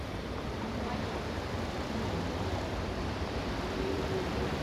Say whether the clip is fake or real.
fake